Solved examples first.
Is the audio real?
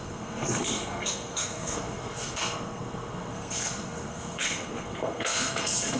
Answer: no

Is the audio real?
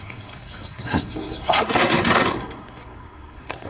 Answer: no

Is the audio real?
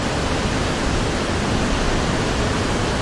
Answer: yes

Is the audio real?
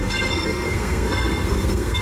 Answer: no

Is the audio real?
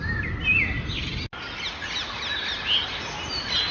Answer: yes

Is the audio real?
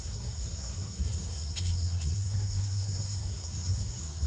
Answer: no